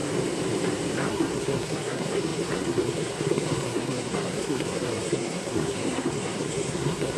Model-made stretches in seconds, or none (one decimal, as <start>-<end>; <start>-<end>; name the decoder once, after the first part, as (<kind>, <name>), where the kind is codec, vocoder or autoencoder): 1.1-7.2 (codec, SNAC)